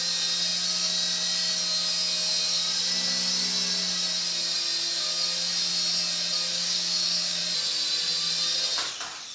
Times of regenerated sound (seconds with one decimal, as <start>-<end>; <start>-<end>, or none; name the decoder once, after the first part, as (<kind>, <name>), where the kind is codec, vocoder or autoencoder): 6.5-7.4 (codec, DAC)